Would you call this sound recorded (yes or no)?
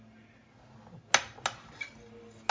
yes